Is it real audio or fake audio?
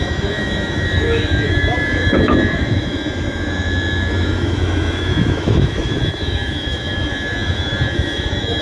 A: fake